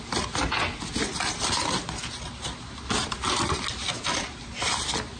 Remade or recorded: recorded